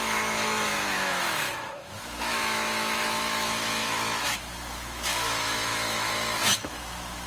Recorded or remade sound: remade